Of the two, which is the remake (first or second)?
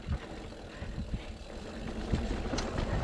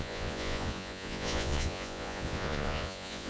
second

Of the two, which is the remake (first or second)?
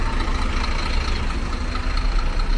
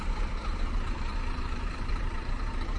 second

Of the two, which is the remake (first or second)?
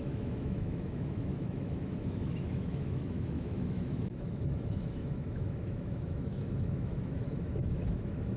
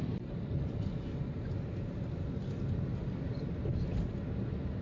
first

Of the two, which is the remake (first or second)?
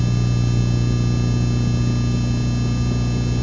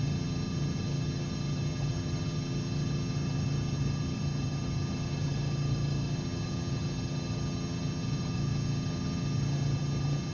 second